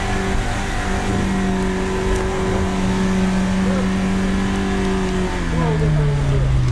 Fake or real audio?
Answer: real